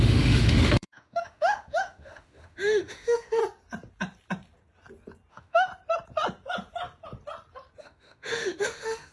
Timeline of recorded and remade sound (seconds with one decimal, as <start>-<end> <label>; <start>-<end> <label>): 0.0-3.4 remade; 3.4-5.3 recorded; 5.3-5.7 remade; 5.7-7.8 recorded; 7.8-9.1 remade